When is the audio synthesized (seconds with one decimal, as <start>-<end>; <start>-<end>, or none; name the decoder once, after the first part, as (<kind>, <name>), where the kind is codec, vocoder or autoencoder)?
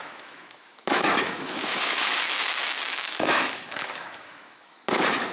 0.0-5.3 (autoencoder, DAC-VAE)